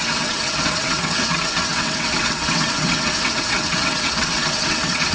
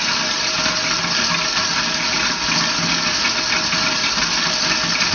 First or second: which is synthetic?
first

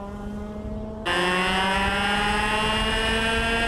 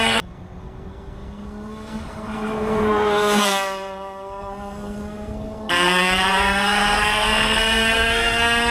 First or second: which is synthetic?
second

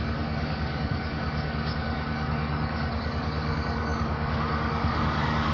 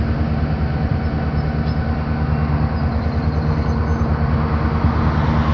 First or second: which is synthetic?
first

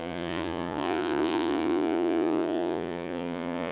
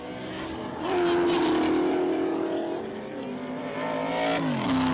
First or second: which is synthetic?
first